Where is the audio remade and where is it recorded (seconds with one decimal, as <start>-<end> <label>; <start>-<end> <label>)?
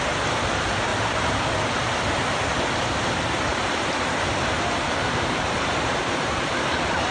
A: 0.0-0.9 recorded; 0.9-1.4 remade; 1.4-3.5 recorded; 3.5-5.9 remade; 5.9-7.1 recorded